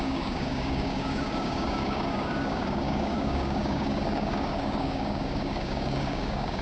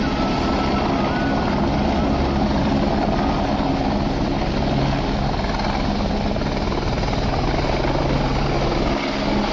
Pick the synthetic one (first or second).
first